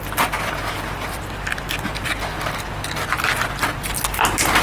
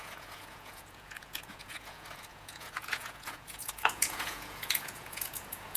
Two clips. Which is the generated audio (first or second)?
second